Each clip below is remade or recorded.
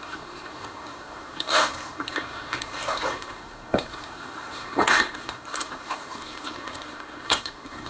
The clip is remade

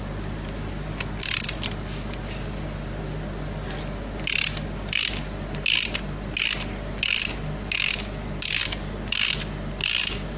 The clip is recorded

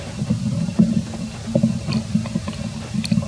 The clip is recorded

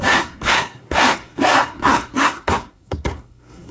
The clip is remade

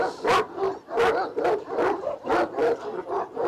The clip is recorded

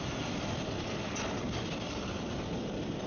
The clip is recorded